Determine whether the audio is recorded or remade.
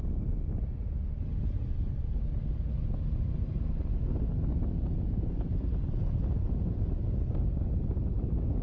recorded